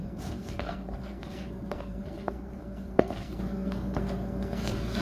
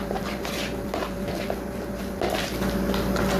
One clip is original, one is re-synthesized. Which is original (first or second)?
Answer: second